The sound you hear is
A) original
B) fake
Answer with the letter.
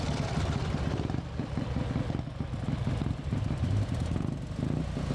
A